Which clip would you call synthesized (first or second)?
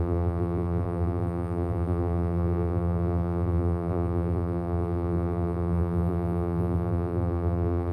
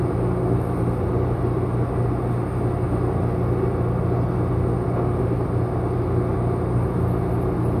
first